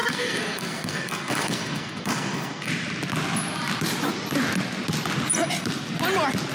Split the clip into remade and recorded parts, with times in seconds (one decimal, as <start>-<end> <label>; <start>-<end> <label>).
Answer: 0.0-2.7 remade; 2.7-6.5 recorded